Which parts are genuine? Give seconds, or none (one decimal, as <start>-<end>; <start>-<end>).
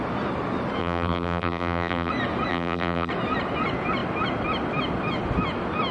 0.0-0.8; 2.1-2.5; 3.1-5.9